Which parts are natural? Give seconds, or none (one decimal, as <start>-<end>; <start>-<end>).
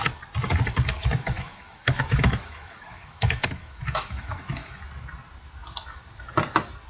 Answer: 0.0-1.0; 4.8-6.9